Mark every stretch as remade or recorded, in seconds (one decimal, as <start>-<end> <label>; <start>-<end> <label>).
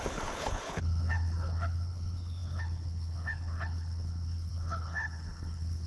0.0-5.9 remade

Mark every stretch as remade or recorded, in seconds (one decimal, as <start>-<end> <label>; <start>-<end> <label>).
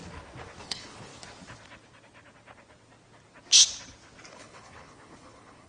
0.0-0.6 recorded; 0.6-1.1 remade; 1.1-4.3 recorded; 4.3-5.7 remade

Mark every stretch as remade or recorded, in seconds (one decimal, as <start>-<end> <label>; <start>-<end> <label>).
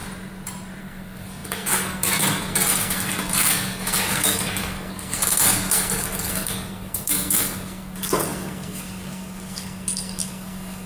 0.0-0.8 recorded; 0.8-10.9 remade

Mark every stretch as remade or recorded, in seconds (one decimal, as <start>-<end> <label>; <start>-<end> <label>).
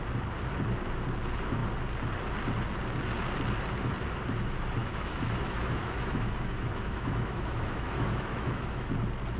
0.0-4.8 recorded; 4.8-8.9 remade; 8.9-9.4 recorded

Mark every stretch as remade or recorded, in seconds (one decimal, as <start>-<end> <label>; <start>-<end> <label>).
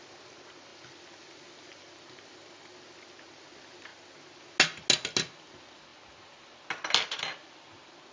0.0-8.1 recorded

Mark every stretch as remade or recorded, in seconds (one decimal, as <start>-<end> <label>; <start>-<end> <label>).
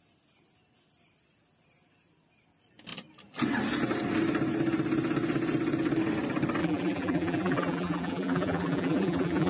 0.0-6.6 recorded; 6.6-9.5 remade